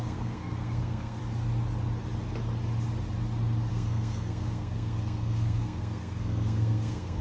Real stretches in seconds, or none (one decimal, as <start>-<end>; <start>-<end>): 1.2-3.7